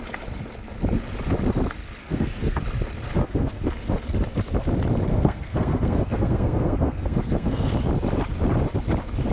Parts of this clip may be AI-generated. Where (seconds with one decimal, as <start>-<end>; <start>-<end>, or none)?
2.0-2.6; 3.2-3.7; 5.1-7.7

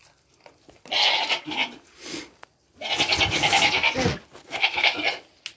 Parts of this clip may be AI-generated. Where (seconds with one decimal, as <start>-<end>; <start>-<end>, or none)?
4.4-4.9

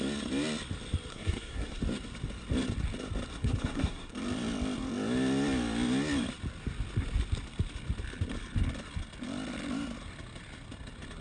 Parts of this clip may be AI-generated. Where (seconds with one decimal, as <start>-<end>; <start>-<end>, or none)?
1.1-1.8; 3.3-4.1

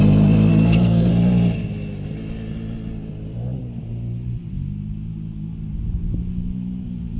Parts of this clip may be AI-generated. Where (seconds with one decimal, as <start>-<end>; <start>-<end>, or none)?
0.5-1.1

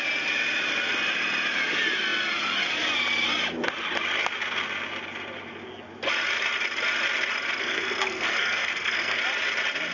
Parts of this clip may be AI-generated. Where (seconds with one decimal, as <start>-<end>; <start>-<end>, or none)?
7.6-9.2